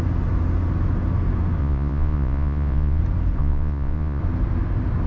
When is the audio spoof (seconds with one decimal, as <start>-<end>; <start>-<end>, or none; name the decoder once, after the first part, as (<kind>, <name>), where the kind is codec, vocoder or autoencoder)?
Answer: 1.6-3.0 (vocoder, Vocos); 3.4-4.2